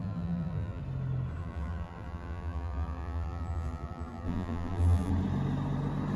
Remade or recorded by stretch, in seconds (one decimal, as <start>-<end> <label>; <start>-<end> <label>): 0.0-0.8 remade; 0.8-1.4 recorded; 1.4-5.1 remade; 5.1-6.2 recorded